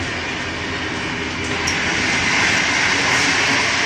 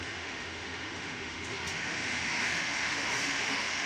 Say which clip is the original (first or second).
first